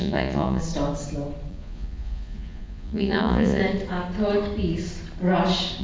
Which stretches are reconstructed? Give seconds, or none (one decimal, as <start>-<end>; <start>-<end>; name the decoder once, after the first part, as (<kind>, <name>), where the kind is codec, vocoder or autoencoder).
0.0-0.6 (vocoder, Vocos); 1.5-3.6